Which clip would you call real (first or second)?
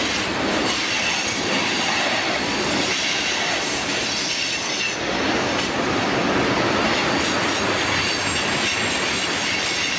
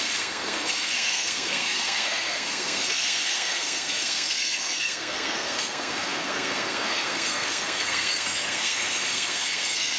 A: first